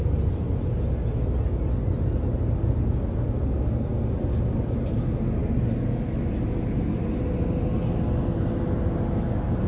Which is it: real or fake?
real